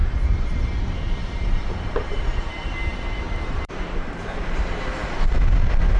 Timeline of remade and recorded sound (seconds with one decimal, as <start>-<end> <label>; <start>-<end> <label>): 0.0-0.6 remade; 0.6-1.2 recorded; 1.2-4.2 remade; 4.2-6.0 recorded

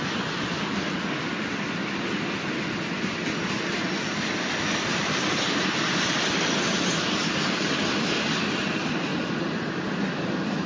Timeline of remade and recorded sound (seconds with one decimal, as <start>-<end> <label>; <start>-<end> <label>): 0.0-10.7 recorded

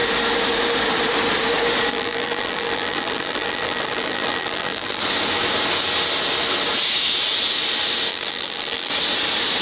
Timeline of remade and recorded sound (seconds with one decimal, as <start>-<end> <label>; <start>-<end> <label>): 0.0-1.9 recorded; 1.9-5.0 remade; 5.0-8.1 recorded; 8.1-8.9 remade; 8.9-9.6 recorded

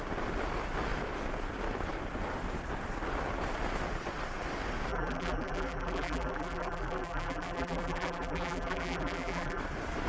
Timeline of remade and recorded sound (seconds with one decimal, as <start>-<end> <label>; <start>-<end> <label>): 0.0-4.9 recorded; 4.9-9.6 remade; 9.6-10.1 recorded

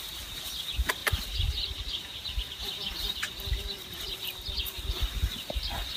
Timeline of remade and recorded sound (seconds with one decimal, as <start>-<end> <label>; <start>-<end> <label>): 0.0-1.0 recorded; 1.0-4.6 remade; 4.6-6.0 recorded

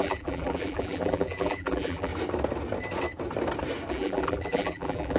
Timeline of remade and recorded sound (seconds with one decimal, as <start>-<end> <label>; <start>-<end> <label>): 0.0-2.1 remade; 2.1-3.9 recorded; 3.9-5.2 remade

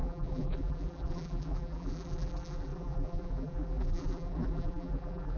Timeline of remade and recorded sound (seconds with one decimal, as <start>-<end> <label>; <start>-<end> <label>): 0.0-5.4 remade

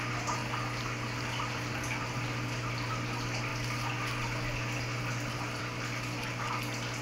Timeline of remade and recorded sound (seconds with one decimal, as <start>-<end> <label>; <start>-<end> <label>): 0.0-7.0 recorded